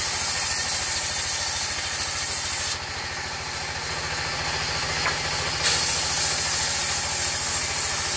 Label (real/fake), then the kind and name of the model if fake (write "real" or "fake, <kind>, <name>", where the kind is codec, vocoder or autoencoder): real